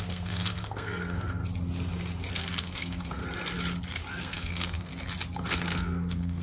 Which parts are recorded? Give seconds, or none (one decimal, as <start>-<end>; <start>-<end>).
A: 1.4-2.3; 3.2-4.2; 4.9-5.5